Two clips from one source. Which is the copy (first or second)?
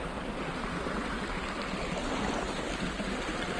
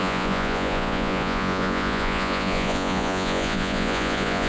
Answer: second